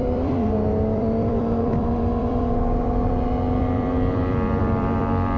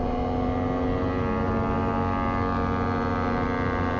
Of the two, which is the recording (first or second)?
second